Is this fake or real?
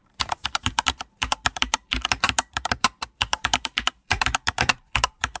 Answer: fake